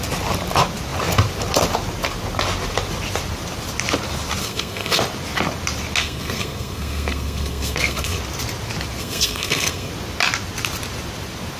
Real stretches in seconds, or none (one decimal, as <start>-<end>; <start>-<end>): 0.0-4.4; 5.0-6.0; 8.2-9.0; 9.9-11.6